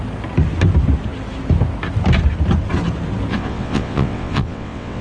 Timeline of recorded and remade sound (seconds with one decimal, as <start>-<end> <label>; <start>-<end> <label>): 0.0-3.3 recorded; 3.3-5.0 remade